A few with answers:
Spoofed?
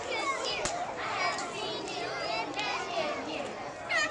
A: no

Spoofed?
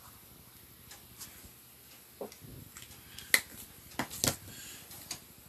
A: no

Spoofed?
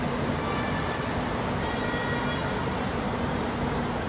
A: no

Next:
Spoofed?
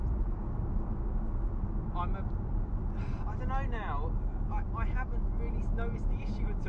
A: no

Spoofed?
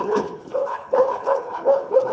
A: yes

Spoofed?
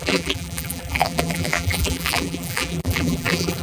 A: yes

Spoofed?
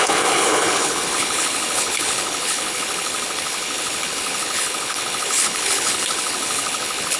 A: yes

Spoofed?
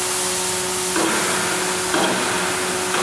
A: no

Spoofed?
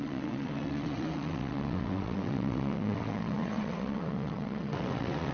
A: yes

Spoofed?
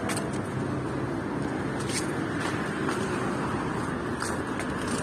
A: no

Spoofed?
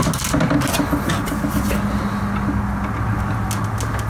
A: no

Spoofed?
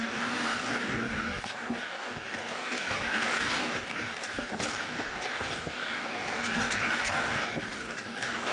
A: yes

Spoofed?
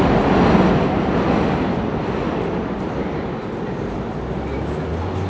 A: no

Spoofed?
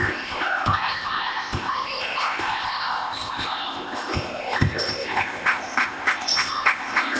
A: yes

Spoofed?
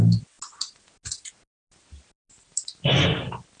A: no